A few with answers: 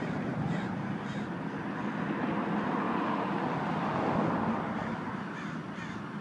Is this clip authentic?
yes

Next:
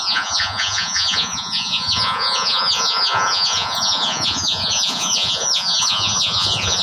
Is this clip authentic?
no